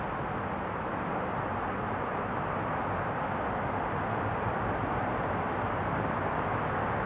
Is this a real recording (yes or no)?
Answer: yes